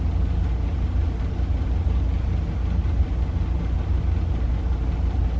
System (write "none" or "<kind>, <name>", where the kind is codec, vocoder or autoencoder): none